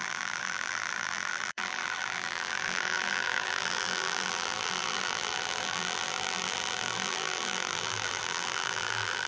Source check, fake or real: fake